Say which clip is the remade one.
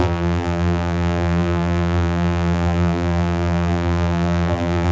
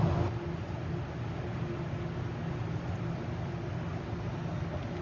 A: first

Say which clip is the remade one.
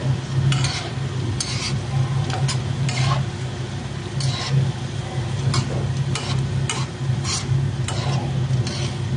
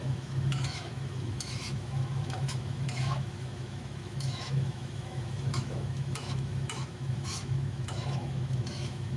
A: second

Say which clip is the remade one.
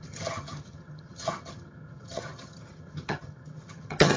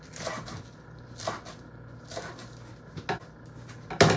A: first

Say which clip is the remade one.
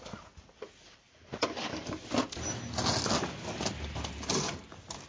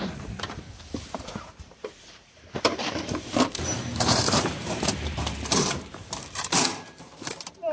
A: second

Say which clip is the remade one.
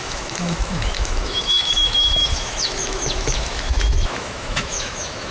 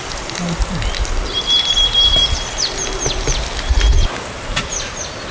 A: first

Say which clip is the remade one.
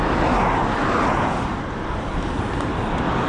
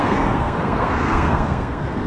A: second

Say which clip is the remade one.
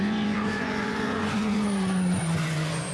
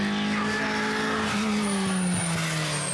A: first